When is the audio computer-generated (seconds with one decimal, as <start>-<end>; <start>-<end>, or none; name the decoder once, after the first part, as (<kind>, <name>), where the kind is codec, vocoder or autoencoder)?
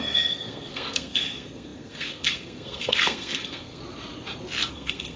0.0-3.8 (codec, SNAC); 4.7-5.2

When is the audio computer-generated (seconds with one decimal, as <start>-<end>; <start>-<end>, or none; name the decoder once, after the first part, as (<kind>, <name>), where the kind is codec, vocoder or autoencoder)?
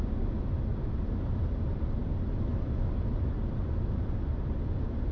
none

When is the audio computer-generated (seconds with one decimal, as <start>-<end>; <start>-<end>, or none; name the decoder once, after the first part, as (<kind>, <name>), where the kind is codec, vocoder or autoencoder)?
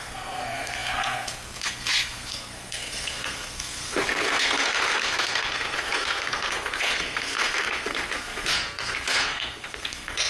0.0-10.3 (codec, SNAC)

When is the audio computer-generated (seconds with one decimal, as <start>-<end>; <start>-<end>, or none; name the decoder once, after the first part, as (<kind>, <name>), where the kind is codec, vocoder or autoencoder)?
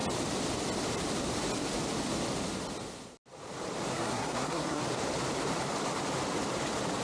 3.9-4.8 (codec, SNAC)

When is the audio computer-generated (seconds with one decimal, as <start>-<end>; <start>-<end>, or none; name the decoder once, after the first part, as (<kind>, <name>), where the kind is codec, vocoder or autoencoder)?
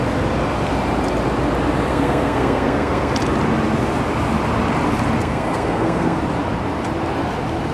1.9-3.1 (codec, SNAC); 5.2-6.2